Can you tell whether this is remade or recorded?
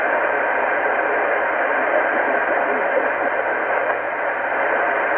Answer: remade